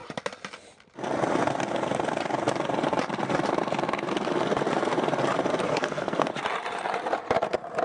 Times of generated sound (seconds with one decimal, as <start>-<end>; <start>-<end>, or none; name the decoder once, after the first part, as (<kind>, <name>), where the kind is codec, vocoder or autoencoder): 5.7-6.3 (codec, SNAC)